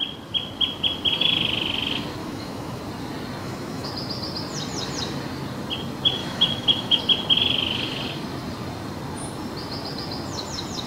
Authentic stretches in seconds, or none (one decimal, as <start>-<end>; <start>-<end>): 0.0-2.2; 2.8-3.4; 3.9-6.2; 7.0-10.9